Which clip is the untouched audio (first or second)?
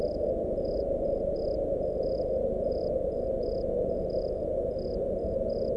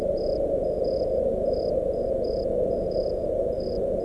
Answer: first